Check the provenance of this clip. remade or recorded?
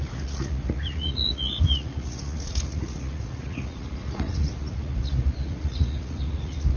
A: remade